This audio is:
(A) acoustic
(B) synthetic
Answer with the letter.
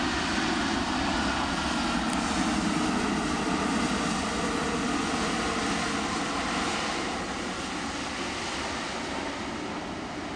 A